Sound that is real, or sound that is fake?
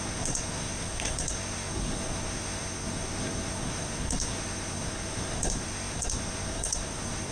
fake